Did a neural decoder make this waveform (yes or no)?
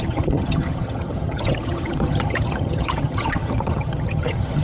yes